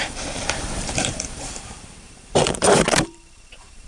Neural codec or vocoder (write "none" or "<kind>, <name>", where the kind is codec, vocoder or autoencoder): vocoder, BigVGAN v2